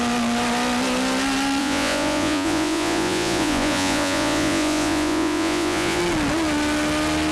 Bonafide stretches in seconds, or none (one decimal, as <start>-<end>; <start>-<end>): 0.0-1.6; 6.0-7.3